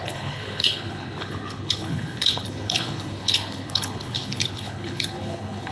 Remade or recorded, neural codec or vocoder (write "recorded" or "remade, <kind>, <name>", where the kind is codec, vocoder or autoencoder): remade, codec, HILCodec